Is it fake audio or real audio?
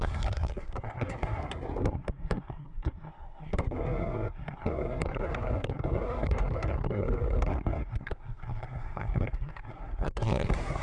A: fake